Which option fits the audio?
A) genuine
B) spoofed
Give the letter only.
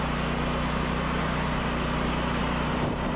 A